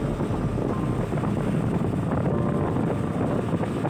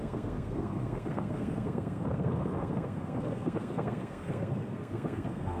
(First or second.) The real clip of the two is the first